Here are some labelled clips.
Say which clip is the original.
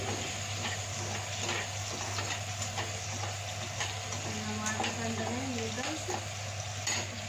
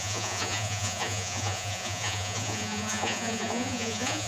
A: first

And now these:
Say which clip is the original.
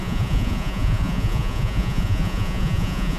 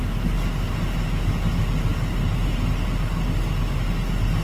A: second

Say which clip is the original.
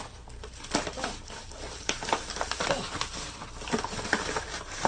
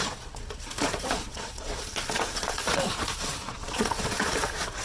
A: first